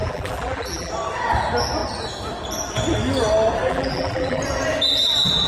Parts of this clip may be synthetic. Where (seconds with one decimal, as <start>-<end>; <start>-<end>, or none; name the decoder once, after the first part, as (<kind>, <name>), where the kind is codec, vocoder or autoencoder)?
0.0-0.9 (vocoder, BigVGAN v2); 3.7-4.4